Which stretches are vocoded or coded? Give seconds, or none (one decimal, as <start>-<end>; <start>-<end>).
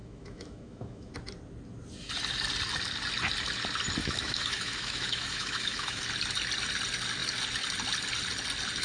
0.0-1.1; 4.0-6.0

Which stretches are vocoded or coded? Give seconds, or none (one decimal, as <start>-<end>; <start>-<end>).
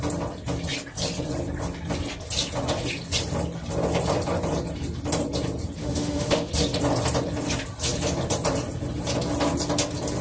5.8-6.5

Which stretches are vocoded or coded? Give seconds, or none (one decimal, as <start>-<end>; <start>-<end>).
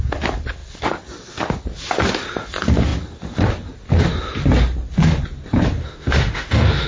5.8-6.9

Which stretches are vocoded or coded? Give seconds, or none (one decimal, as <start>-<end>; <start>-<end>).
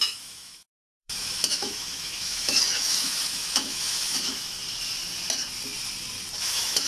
0.0-4.6; 6.4-6.9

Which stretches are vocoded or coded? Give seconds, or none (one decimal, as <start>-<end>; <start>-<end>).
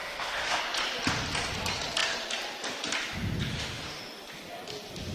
0.0-0.6; 3.5-4.0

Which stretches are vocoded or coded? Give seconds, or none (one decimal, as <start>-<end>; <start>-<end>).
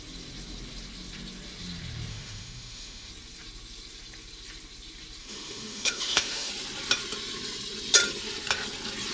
2.1-3.1; 5.2-6.5